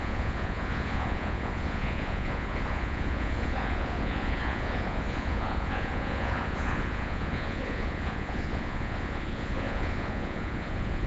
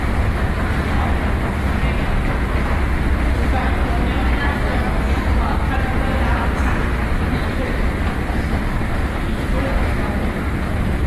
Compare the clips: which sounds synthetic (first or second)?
first